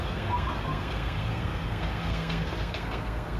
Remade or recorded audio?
remade